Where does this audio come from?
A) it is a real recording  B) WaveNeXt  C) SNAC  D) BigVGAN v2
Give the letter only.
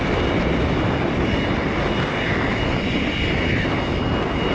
A